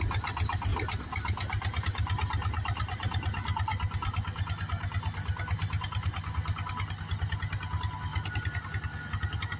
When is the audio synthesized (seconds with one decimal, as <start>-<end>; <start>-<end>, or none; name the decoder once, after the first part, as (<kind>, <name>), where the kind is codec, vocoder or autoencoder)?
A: none